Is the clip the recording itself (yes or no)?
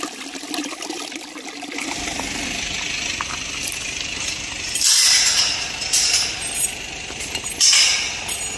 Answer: yes